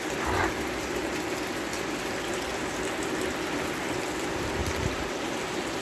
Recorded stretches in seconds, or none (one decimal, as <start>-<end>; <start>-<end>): 0.0-5.8